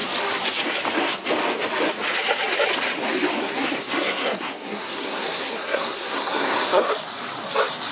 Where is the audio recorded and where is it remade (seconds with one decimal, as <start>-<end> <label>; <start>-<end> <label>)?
0.0-3.4 recorded; 3.4-6.9 remade; 6.9-7.9 recorded